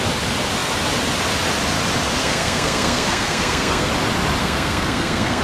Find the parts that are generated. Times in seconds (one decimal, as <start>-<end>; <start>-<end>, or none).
2.2-3.9; 4.4-5.4